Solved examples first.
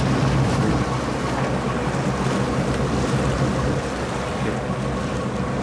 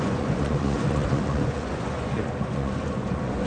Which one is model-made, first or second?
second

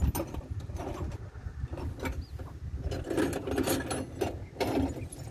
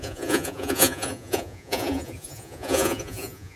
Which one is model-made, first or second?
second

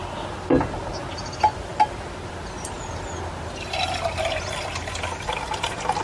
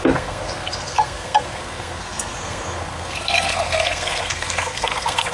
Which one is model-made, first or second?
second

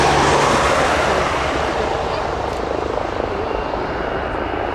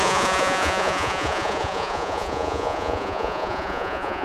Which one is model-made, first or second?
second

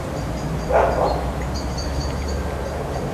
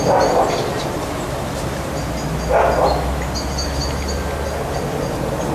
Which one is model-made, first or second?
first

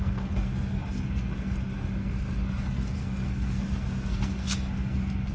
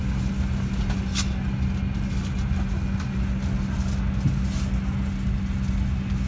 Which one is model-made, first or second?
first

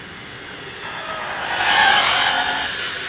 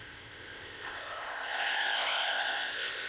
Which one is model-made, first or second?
second